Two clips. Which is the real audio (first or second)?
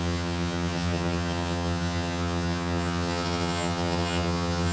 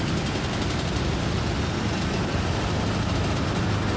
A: second